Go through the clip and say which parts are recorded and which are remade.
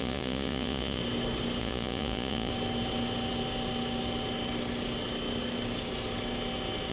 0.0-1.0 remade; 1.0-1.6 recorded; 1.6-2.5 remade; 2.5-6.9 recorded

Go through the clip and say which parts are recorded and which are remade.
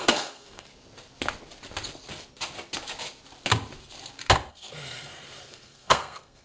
0.0-0.7 remade; 0.7-4.5 recorded; 4.5-6.4 remade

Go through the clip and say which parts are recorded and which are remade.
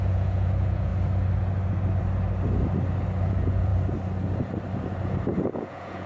0.0-0.9 remade; 0.9-3.3 recorded; 3.3-3.7 remade; 3.7-5.6 recorded; 5.6-6.1 remade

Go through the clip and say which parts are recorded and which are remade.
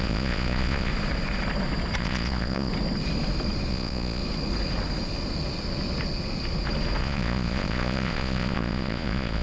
0.0-0.9 remade; 0.9-2.0 recorded; 2.0-2.7 remade; 2.7-3.7 recorded; 3.7-4.2 remade; 4.2-7.0 recorded; 7.0-9.4 remade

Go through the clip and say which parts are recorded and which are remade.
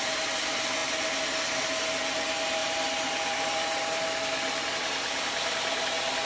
0.0-6.3 recorded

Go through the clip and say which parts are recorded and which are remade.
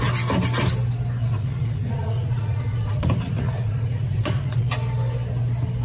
0.0-1.2 recorded; 1.2-4.7 remade; 4.7-5.8 recorded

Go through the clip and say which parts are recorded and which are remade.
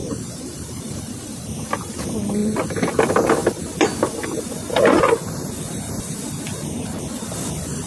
0.0-1.0 remade; 1.0-7.9 recorded